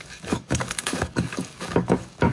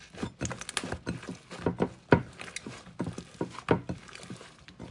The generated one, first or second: first